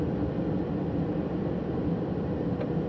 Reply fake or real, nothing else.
real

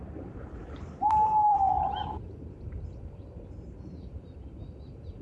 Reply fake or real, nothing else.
fake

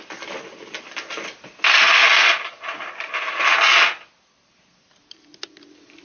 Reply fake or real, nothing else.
real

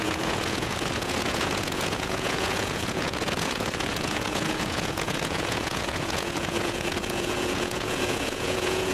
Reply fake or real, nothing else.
fake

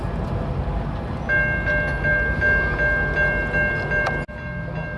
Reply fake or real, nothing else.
real